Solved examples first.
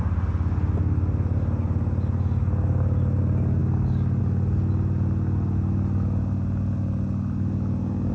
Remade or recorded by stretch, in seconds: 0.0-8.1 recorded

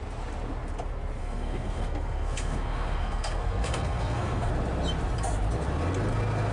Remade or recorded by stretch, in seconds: 0.0-1.2 recorded; 1.2-4.5 remade; 4.5-6.5 recorded